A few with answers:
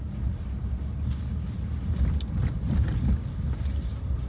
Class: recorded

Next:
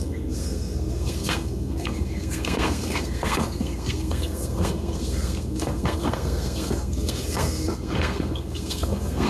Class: remade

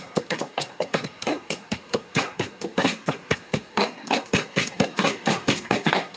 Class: remade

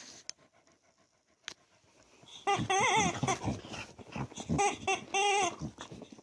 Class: recorded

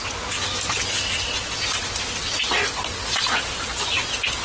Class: recorded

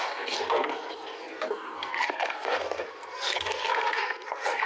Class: remade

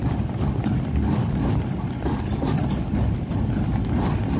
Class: recorded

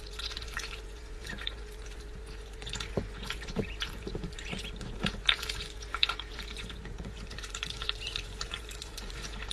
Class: remade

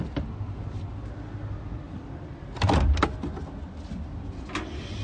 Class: recorded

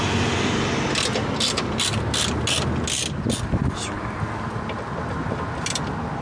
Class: recorded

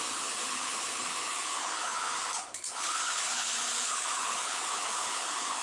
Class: remade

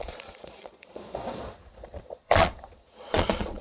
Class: remade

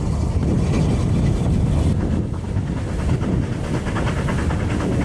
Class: recorded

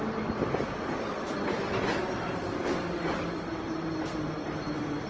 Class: recorded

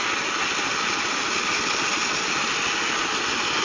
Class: recorded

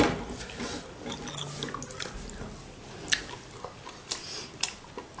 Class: recorded